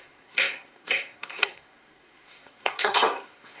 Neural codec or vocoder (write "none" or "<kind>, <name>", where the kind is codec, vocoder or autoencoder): codec, SNAC